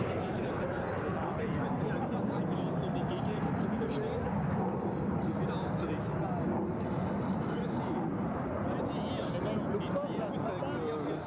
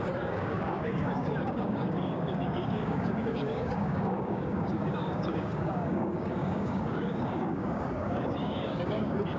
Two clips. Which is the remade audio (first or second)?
second